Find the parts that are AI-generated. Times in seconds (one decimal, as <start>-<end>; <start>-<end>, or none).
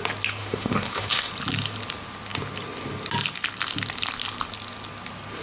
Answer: 0.4-1.3